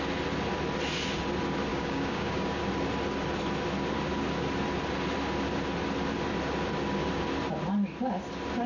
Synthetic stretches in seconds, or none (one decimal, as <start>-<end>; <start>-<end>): 1.7-2.6